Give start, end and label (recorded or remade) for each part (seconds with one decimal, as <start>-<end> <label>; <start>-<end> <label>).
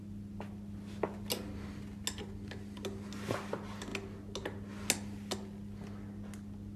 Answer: 0.0-6.8 recorded